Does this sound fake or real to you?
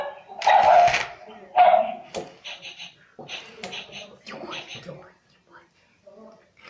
real